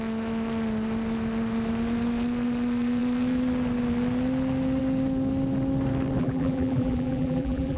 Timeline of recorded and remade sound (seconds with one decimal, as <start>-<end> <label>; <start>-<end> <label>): 0.0-6.2 recorded; 6.2-7.8 remade